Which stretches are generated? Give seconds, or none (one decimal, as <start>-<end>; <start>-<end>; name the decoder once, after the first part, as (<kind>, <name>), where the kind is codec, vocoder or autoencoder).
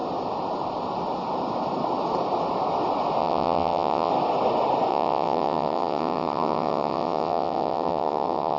3.2-4.1 (vocoder, WaveNeXt); 4.9-8.6